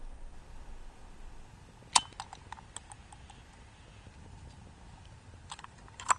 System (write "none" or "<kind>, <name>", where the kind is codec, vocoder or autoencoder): none